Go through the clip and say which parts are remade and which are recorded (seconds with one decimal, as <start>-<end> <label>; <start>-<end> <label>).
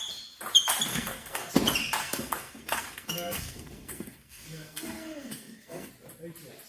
0.0-0.9 recorded; 0.9-1.5 remade; 1.5-2.0 recorded; 2.0-5.9 remade; 5.9-6.7 recorded